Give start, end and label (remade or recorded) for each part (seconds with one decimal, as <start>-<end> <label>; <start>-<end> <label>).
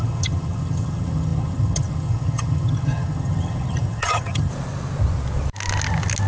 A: 0.0-4.5 remade; 4.5-6.3 recorded